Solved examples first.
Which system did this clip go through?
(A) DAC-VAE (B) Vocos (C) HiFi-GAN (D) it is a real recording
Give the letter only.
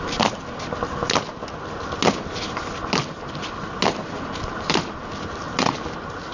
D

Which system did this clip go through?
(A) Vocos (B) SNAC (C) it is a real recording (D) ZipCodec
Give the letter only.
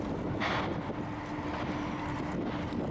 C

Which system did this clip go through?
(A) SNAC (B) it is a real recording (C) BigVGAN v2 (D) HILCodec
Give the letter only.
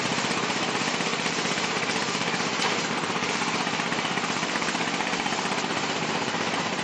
C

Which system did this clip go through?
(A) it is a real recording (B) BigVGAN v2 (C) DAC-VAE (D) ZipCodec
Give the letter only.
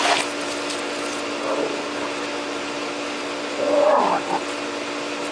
A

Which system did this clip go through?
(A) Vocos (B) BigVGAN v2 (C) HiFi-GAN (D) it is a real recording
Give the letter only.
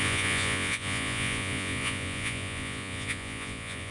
A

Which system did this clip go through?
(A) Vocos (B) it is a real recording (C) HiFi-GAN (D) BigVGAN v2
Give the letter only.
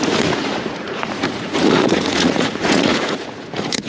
A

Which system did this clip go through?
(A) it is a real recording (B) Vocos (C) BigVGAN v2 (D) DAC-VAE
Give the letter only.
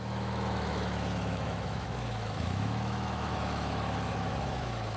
D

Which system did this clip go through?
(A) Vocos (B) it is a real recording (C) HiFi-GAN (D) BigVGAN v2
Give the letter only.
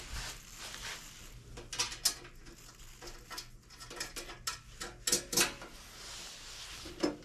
B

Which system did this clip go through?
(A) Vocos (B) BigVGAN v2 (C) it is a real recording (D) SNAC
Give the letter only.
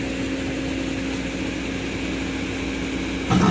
C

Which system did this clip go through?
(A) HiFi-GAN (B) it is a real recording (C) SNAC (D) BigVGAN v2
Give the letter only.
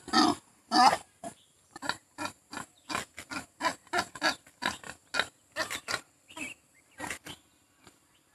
B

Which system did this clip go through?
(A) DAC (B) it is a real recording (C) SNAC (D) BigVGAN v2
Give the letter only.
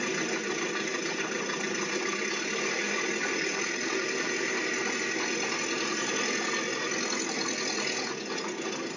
B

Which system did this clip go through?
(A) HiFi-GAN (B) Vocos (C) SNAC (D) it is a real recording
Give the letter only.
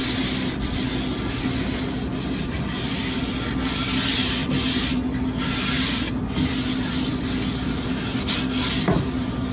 D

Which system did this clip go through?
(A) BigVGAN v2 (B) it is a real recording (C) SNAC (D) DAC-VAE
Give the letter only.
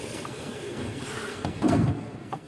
C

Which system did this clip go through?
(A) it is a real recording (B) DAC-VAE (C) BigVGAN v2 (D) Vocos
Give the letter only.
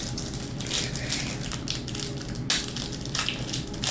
A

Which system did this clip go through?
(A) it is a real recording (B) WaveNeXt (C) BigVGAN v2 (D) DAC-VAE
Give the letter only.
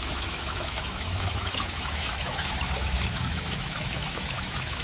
D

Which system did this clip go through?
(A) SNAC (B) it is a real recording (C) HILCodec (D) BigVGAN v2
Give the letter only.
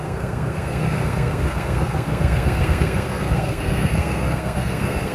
A